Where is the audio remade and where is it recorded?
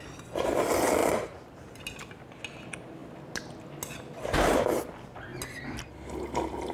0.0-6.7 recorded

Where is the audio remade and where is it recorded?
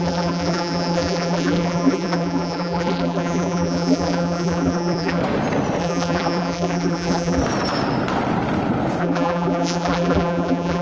0.0-5.2 remade; 5.2-5.8 recorded; 5.8-7.4 remade; 7.4-9.0 recorded; 9.0-10.8 remade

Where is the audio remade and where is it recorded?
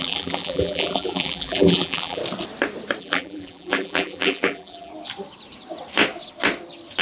0.0-2.2 remade; 2.2-3.0 recorded; 3.0-4.9 remade; 4.9-7.0 recorded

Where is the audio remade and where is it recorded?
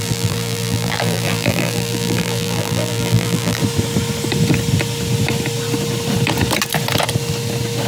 0.0-3.6 remade; 3.6-7.9 recorded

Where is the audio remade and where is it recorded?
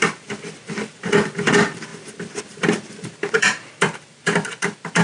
0.0-1.9 remade; 1.9-2.4 recorded; 2.4-5.0 remade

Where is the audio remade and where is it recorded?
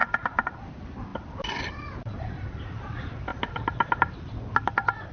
0.0-0.6 remade; 0.6-3.3 recorded; 3.3-4.2 remade; 4.2-5.1 recorded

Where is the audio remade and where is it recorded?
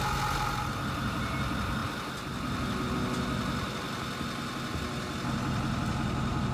0.0-1.8 recorded; 1.8-2.9 remade; 2.9-6.5 recorded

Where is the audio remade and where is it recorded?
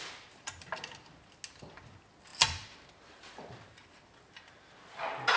0.0-2.3 recorded; 2.3-4.1 remade; 4.1-5.4 recorded